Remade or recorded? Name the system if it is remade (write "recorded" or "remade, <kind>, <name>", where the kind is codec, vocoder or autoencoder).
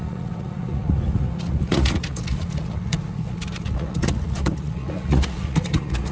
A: remade, vocoder, Vocos